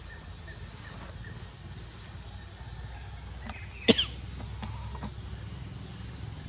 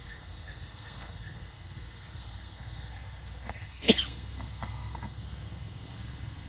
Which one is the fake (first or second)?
second